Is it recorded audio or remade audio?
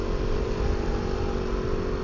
recorded